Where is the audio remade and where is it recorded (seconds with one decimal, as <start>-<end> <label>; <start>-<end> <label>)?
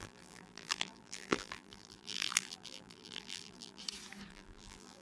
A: 0.0-3.8 remade; 3.8-4.3 recorded; 4.3-5.0 remade